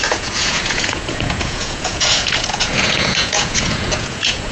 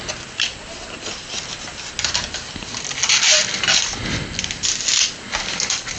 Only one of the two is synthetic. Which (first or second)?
first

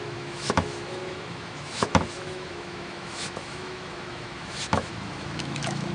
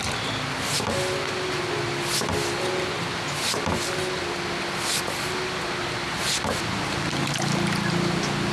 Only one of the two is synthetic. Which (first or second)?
first